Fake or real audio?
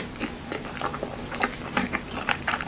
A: fake